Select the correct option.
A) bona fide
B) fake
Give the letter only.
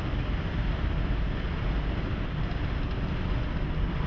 A